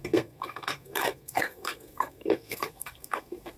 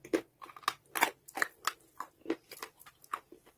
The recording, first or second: second